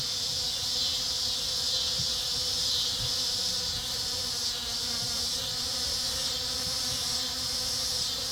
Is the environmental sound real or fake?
real